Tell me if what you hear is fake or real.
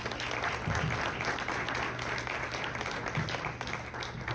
real